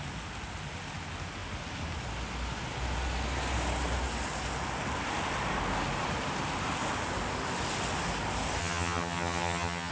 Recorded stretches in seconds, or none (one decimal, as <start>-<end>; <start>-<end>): 0.0-8.6